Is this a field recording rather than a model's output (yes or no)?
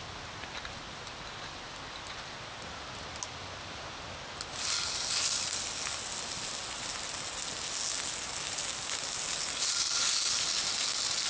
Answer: yes